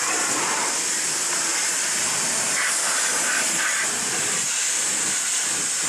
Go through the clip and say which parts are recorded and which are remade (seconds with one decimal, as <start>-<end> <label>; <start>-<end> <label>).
0.0-5.9 recorded